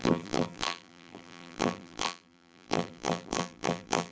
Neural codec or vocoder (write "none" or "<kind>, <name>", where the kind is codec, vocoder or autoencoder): vocoder, BigVGAN v2